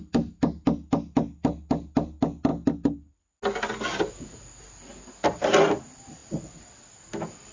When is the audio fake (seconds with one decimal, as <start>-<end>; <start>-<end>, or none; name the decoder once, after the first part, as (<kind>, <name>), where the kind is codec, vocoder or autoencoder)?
none